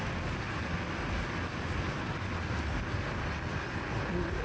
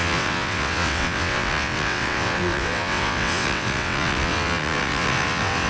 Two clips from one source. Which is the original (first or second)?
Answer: first